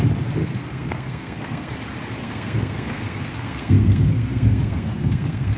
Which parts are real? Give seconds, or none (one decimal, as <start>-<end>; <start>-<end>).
0.0-0.4; 1.7-2.2